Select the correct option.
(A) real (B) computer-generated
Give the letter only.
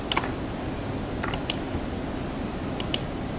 A